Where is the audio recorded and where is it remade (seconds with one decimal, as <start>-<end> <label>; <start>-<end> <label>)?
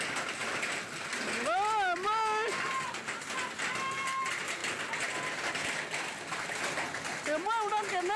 0.0-8.2 recorded